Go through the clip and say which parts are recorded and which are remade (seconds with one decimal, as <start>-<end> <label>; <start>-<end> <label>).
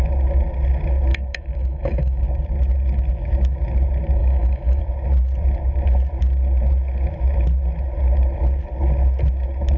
0.0-1.1 recorded; 1.1-2.2 remade; 2.2-4.2 recorded; 4.2-4.8 remade; 4.8-9.8 recorded